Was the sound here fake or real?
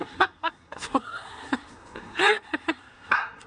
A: fake